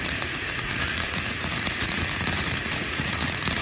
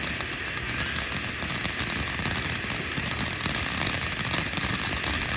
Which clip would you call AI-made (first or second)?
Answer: first